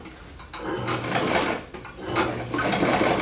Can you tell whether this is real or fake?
real